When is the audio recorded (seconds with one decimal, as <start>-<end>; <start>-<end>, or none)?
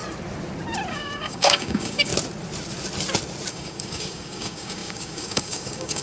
0.0-0.9; 2.1-3.5